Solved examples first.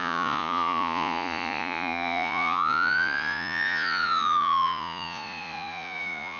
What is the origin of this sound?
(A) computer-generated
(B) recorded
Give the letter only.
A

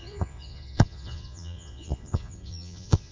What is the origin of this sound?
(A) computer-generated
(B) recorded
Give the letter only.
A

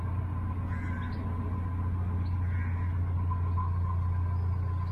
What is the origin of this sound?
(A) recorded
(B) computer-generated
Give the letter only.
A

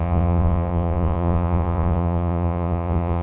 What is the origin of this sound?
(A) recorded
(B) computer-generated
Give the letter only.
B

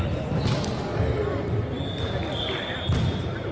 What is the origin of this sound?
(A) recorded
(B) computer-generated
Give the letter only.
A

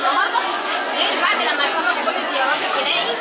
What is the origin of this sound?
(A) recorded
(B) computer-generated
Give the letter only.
B